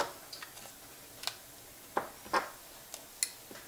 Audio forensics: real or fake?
real